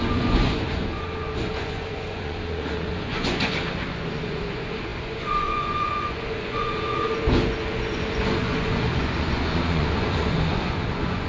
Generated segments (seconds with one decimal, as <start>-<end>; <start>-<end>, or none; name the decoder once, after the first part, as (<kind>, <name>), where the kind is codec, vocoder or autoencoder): 0.0-11.3 (vocoder, Vocos)